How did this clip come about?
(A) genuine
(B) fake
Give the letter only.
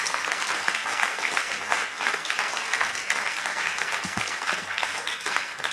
B